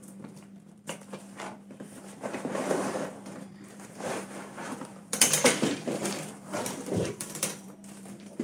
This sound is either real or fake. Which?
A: fake